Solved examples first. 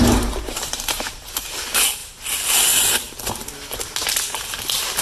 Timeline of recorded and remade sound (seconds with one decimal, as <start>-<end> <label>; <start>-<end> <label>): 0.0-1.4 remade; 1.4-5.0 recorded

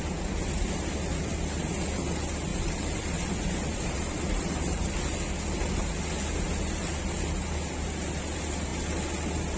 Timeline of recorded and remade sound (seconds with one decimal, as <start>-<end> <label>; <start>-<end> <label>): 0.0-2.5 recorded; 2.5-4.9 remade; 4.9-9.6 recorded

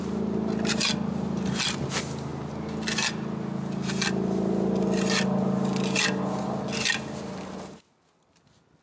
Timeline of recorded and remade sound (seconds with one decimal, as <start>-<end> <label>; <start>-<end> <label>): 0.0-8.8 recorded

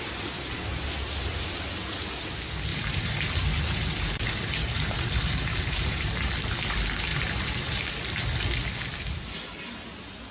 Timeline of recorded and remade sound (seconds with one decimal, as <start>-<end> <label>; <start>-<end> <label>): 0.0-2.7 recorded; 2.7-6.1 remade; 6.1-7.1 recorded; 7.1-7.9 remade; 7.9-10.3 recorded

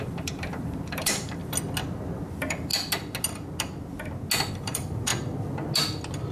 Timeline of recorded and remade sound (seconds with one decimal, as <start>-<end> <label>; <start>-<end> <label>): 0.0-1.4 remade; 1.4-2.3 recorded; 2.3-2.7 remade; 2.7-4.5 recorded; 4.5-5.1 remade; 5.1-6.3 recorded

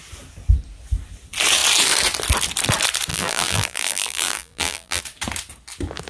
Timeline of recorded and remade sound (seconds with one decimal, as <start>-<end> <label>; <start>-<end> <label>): 0.0-3.1 recorded; 3.1-5.0 remade; 5.0-6.1 recorded